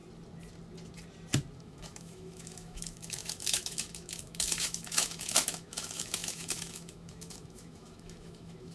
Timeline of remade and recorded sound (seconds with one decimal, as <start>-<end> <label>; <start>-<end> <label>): 0.0-1.6 recorded; 1.6-8.7 remade